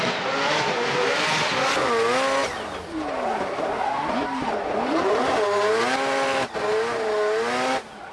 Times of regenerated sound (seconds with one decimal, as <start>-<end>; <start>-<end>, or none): 2.4-5.7